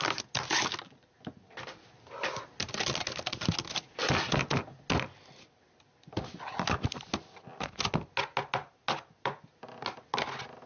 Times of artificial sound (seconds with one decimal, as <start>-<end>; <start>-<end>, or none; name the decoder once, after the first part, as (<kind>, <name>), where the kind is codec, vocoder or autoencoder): none